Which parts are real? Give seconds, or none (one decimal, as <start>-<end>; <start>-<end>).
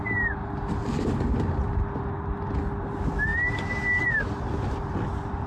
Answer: 0.0-5.5